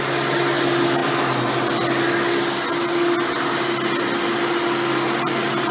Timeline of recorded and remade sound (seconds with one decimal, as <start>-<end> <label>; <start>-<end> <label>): 0.0-5.7 recorded